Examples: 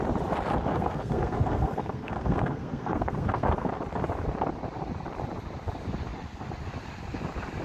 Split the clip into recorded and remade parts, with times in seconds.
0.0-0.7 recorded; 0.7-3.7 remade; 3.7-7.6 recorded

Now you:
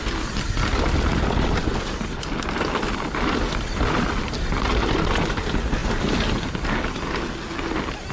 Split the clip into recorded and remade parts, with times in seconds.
0.0-8.1 recorded

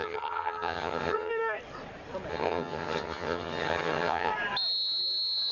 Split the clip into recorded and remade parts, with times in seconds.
0.0-1.3 remade; 1.3-2.3 recorded; 2.3-4.3 remade; 4.3-5.5 recorded

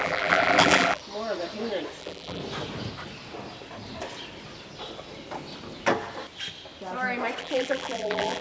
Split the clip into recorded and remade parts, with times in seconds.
0.0-1.0 remade; 1.0-2.0 recorded; 2.0-2.4 remade; 2.4-7.4 recorded; 7.4-8.4 remade